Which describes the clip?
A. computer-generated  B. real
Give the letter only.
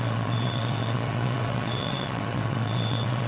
A